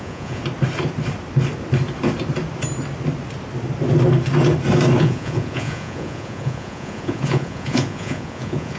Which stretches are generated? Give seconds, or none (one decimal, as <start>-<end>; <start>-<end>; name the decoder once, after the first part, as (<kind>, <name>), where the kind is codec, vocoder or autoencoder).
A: 0.0-0.4 (vocoder, Vocos); 5.0-8.8